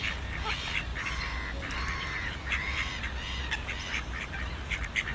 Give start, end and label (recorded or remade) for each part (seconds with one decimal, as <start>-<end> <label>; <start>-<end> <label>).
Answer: 0.0-5.1 recorded